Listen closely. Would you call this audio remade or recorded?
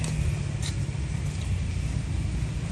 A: recorded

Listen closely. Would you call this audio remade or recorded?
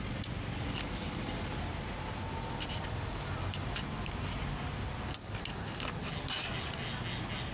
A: recorded